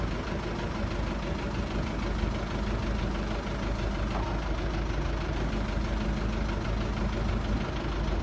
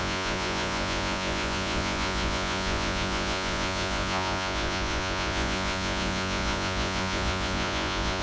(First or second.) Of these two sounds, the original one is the first